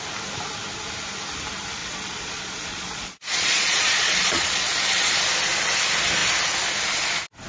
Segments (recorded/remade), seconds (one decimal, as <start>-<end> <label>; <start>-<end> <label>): 0.0-1.8 recorded; 1.8-5.1 remade; 5.1-7.5 recorded